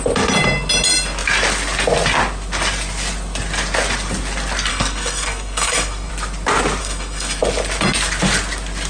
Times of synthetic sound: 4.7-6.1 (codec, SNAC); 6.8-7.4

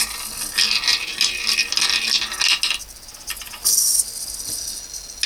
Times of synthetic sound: none

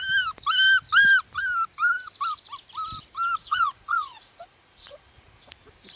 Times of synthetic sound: 3.4-5.5 (vocoder, Vocos)

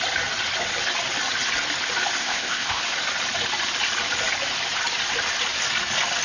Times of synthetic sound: 2.2-2.8 (codec, ZipCodec)

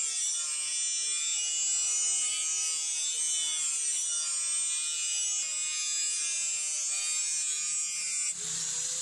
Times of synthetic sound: none

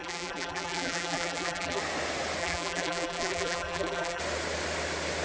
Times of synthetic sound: 0.0-1.8 (vocoder, BigVGAN v2); 2.4-4.2

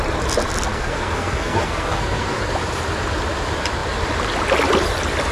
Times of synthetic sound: 0.7-2.4 (codec, SNAC)